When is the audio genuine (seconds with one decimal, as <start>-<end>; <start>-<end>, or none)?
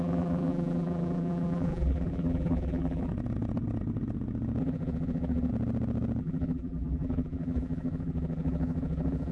3.1-4.6; 5.5-6.2